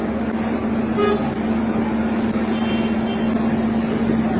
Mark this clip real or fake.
real